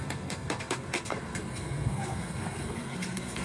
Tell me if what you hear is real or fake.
fake